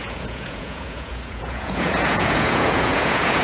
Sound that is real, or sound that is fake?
fake